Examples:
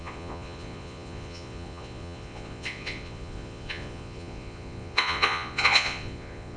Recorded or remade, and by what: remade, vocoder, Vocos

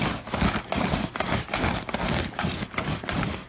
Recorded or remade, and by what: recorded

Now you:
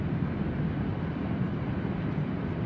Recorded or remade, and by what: recorded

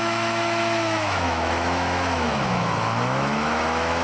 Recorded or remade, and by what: remade, autoencoder, DAC-VAE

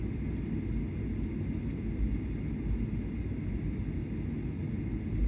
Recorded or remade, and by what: recorded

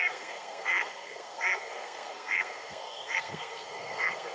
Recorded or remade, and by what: remade, codec, SNAC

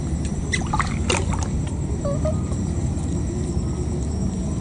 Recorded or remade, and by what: recorded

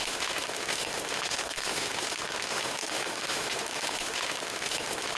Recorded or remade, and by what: remade, autoencoder, DAC-VAE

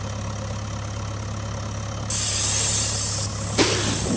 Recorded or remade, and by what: recorded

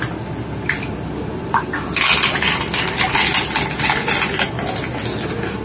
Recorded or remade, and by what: recorded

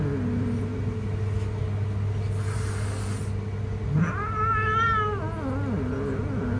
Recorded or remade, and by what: recorded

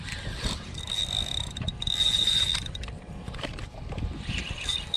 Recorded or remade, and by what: remade, vocoder, BigVGAN v2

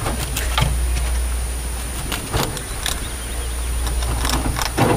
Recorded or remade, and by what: recorded